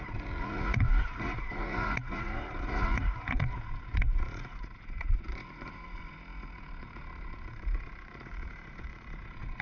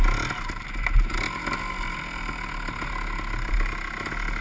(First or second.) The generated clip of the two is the first